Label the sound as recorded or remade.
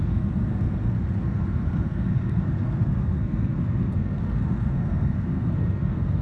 remade